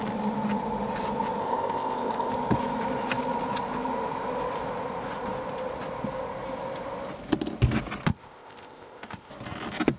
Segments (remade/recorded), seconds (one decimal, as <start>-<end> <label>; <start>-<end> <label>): 0.0-1.4 recorded; 1.4-2.3 remade; 2.3-8.1 recorded; 8.1-9.3 remade; 9.3-10.0 recorded